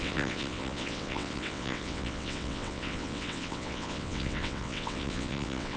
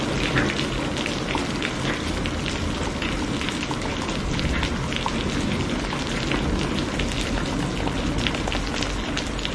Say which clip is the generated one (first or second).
first